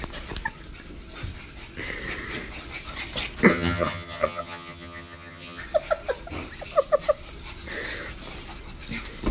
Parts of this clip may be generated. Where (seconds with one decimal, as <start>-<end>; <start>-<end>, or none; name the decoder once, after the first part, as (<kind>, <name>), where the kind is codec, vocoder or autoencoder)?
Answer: 3.5-5.6 (vocoder, HiFi-GAN)

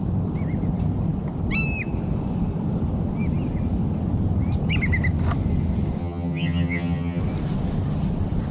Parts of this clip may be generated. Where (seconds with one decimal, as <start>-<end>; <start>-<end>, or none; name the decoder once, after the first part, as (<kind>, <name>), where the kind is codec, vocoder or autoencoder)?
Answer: 6.0-7.2 (vocoder, HiFi-GAN)

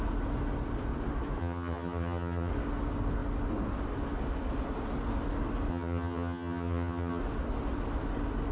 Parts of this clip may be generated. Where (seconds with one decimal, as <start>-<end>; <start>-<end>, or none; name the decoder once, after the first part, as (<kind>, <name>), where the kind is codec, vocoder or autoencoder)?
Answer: 1.4-2.5 (vocoder, HiFi-GAN); 5.7-7.2

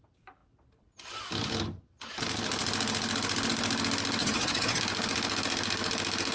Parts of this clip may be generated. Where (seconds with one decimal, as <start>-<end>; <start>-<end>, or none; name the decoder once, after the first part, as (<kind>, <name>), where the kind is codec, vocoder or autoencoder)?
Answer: 4.2-4.8 (vocoder, HiFi-GAN)

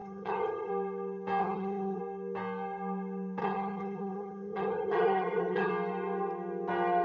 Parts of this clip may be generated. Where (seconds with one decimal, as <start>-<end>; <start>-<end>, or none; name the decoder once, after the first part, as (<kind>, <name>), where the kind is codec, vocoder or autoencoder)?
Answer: 0.0-0.7 (vocoder, HiFi-GAN); 1.4-2.0; 3.4-5.7

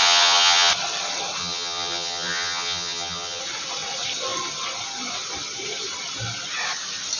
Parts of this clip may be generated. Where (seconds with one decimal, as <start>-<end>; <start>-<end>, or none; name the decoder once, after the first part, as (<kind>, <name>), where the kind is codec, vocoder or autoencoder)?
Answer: 0.0-0.7 (vocoder, HiFi-GAN); 1.4-3.4

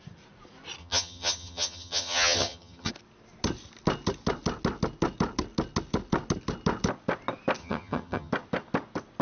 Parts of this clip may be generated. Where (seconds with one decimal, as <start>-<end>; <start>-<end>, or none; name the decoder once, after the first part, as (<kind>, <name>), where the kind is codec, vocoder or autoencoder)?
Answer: 0.8-2.9 (vocoder, HiFi-GAN); 7.6-8.3